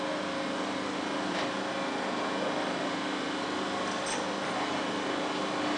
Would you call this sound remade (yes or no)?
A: no